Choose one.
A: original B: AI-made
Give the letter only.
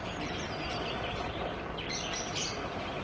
A